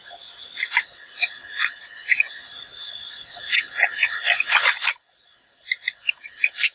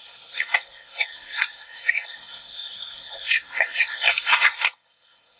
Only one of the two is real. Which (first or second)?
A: first